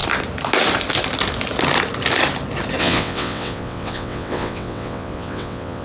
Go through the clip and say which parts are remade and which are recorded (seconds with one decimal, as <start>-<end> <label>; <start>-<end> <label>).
0.0-2.8 recorded; 2.8-5.8 remade